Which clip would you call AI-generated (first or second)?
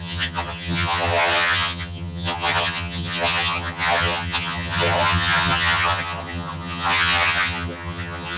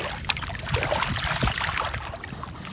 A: first